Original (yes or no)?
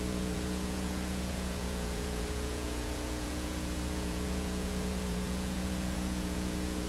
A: no